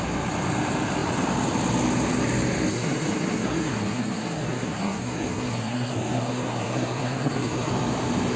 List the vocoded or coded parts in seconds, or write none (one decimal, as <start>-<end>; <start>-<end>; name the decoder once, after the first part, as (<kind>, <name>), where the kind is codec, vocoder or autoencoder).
2.7-7.7 (codec, SNAC)